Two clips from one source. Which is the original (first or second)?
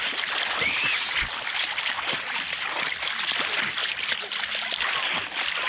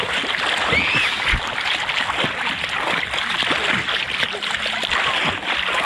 second